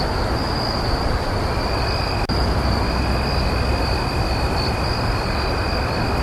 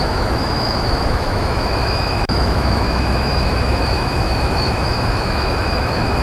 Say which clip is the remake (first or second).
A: second